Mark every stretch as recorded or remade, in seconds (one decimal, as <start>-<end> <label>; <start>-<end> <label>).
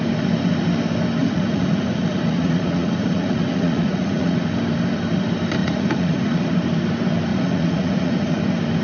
0.0-1.2 recorded; 1.2-4.4 remade; 4.4-5.6 recorded; 5.6-6.5 remade; 6.5-7.3 recorded; 7.3-8.4 remade; 8.4-8.8 recorded